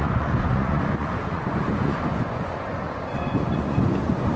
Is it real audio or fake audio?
fake